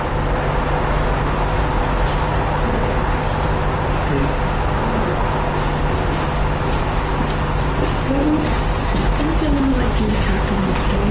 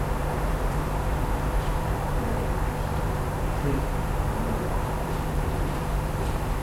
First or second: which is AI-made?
second